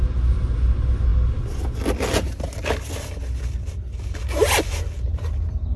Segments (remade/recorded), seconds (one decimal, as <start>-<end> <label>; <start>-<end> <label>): 0.0-5.8 recorded